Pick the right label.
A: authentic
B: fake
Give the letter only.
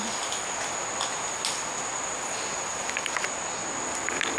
A